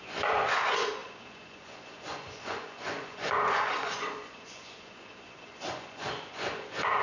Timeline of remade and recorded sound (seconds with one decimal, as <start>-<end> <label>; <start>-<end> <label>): 0.0-7.0 remade